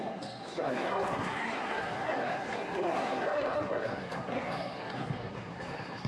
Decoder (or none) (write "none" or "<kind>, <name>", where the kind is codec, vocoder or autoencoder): codec, SNAC